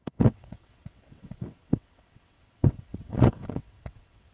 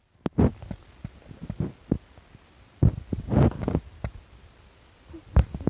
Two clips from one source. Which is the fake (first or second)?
first